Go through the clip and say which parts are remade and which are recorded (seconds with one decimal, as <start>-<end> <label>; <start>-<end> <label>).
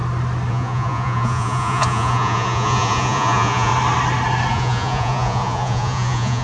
0.0-0.5 recorded; 0.5-3.7 remade; 3.7-4.5 recorded; 4.5-6.4 remade